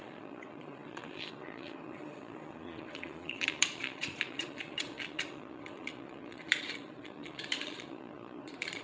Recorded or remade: remade